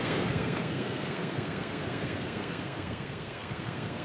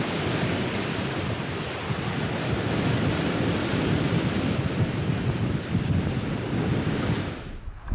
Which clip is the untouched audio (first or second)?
second